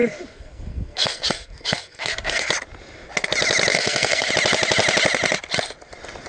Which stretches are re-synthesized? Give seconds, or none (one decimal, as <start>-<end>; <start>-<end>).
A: 0.0-2.5; 3.7-4.3